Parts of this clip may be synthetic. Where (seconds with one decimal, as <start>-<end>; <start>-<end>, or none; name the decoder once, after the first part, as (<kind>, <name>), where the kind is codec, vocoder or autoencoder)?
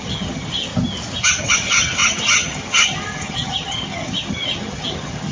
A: 0.0-0.7 (vocoder, HiFi-GAN); 1.4-5.3